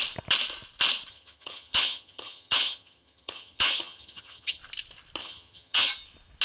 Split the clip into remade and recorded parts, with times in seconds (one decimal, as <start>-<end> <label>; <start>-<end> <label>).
0.0-1.1 recorded; 1.1-4.6 remade; 4.6-5.2 recorded; 5.2-5.9 remade; 5.9-6.4 recorded